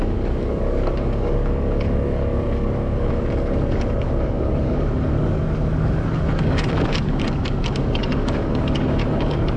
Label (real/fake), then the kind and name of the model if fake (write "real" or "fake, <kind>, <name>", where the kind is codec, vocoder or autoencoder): fake, codec, DAC